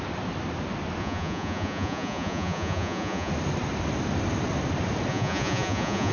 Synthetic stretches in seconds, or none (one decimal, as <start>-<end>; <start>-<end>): 1.0-3.3; 5.1-6.1